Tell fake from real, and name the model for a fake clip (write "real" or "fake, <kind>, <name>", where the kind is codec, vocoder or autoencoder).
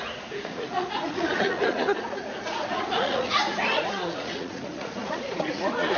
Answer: fake, vocoder, Vocos